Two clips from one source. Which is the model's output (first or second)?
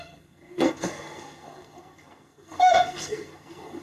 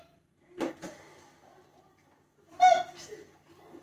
first